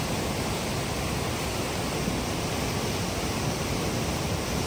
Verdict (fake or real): real